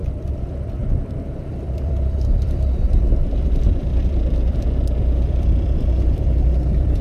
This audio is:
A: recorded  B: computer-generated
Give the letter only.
B